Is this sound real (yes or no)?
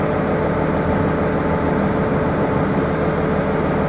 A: yes